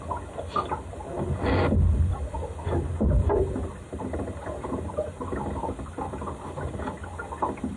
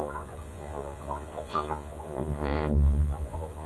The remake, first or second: second